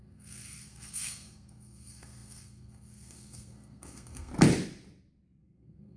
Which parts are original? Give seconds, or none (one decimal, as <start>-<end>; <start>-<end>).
4.3-5.4